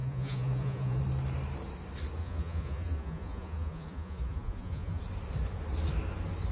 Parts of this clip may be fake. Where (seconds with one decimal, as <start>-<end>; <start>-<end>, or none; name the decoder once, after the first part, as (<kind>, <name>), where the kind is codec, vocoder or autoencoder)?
0.0-1.0 (vocoder, Vocos); 2.2-5.0